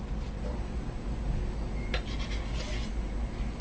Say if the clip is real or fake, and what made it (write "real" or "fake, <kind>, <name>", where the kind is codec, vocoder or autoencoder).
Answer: real